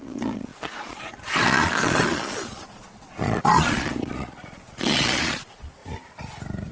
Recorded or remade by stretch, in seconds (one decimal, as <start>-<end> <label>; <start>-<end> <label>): 0.0-5.8 remade; 5.8-6.7 recorded